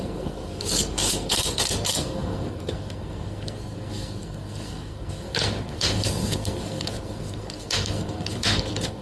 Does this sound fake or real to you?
fake